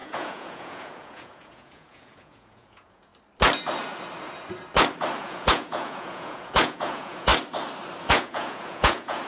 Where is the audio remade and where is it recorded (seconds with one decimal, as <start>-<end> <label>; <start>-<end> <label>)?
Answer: 0.0-3.1 remade; 3.1-5.2 recorded; 5.2-7.3 remade; 7.3-8.1 recorded; 8.1-9.3 remade